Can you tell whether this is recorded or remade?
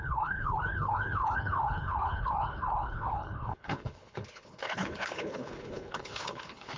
remade